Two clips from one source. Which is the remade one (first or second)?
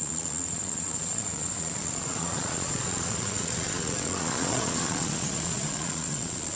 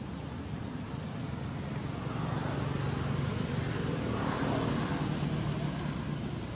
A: first